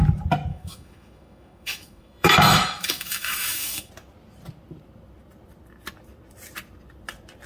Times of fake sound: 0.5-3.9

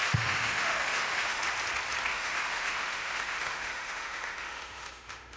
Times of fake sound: 0.0-1.4; 2.1-5.4

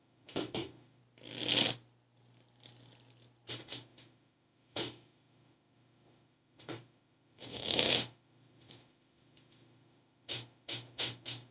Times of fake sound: 0.0-1.0; 3.5-11.5

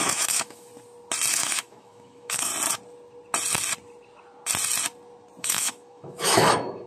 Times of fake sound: 0.0-0.7; 1.3-2.5; 5.4-6.9

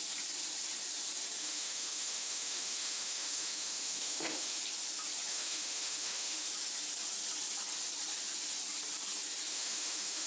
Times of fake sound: 1.4-4.6; 5.3-6.5; 9.5-10.3

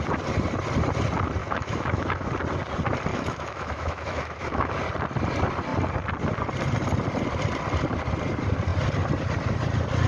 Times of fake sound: 1.4-2.3; 3.1-4.7